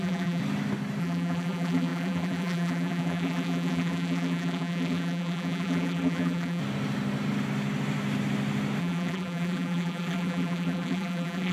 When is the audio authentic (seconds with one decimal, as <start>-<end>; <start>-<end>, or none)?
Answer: 0.4-1.0; 6.6-8.8